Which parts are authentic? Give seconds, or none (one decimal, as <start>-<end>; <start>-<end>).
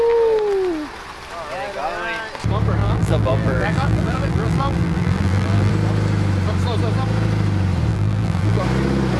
0.0-2.8; 5.7-7.9; 8.6-9.2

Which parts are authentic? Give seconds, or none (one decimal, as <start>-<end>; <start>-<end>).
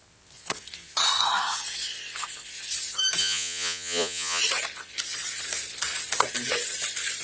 0.0-3.2; 4.4-7.2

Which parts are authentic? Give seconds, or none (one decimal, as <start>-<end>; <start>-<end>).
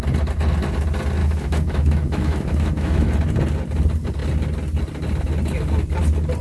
0.0-1.2; 3.1-6.4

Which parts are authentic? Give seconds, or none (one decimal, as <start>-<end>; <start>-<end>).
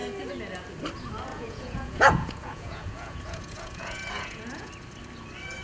0.0-1.3; 4.7-5.6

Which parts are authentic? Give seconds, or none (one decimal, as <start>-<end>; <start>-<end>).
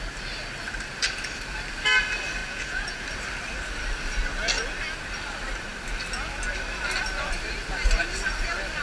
0.0-2.4; 3.0-8.8